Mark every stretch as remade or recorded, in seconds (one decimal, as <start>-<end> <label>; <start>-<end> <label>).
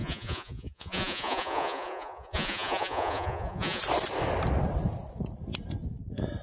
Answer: 0.0-3.8 remade; 3.8-6.4 recorded